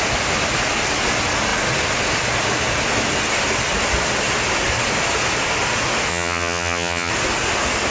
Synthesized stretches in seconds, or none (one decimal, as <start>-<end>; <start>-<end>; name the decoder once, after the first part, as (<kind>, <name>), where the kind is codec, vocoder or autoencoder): 6.1-7.1 (vocoder, HiFi-GAN)